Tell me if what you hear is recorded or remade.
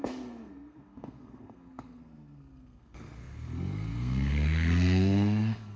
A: remade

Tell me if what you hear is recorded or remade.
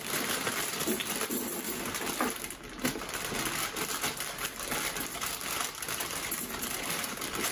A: recorded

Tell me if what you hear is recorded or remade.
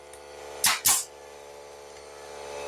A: recorded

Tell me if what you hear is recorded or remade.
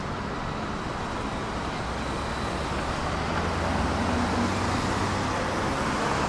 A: recorded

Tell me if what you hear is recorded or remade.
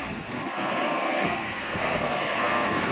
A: remade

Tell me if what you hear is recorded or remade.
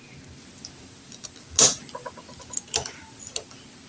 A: recorded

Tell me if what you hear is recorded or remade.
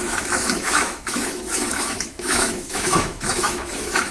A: remade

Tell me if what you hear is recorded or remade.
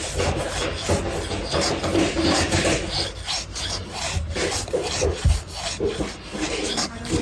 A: recorded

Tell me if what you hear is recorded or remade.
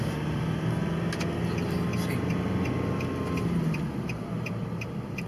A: recorded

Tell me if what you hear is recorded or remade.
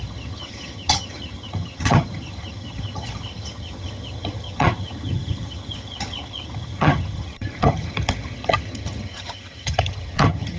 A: remade